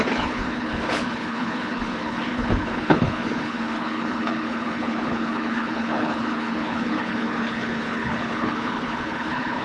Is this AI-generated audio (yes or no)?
yes